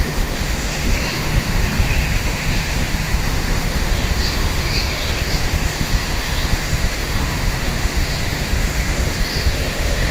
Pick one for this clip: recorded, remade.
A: remade